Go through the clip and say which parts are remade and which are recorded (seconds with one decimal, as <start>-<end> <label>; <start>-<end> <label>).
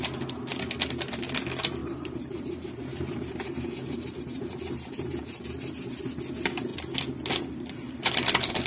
0.0-1.8 recorded; 1.8-6.0 remade; 6.0-8.7 recorded